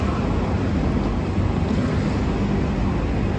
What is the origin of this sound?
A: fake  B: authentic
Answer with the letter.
B